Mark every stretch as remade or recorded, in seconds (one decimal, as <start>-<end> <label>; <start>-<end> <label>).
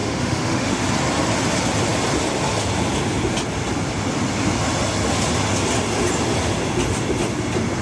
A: 0.0-0.8 remade; 0.8-7.8 recorded